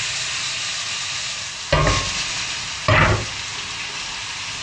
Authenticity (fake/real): real